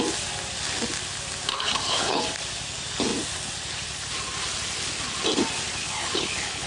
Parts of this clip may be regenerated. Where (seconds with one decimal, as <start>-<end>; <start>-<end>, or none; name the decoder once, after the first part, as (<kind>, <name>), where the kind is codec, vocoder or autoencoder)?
1.5-2.2 (codec, HILCodec); 5.8-6.7